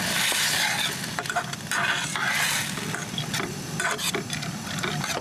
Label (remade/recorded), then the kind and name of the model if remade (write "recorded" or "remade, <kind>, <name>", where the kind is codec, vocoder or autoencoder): recorded